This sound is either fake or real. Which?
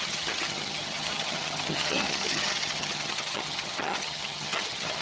fake